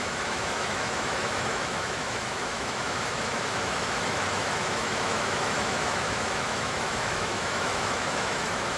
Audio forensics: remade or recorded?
remade